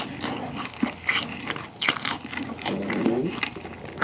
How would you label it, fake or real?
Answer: real